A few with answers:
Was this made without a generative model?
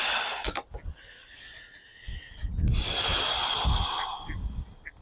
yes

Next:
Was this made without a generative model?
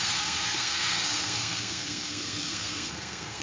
no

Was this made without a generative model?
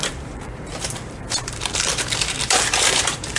no